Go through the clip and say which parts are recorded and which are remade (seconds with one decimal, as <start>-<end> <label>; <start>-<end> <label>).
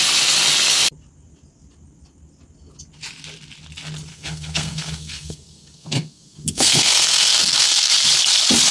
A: 0.0-4.1 recorded; 4.1-7.9 remade; 7.9-8.7 recorded